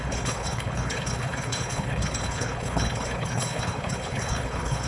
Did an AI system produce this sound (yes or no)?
yes